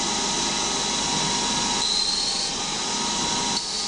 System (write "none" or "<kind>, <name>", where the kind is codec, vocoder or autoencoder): none